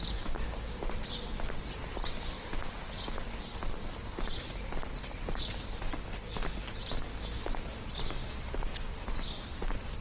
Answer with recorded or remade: recorded